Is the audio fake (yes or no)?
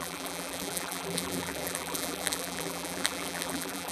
yes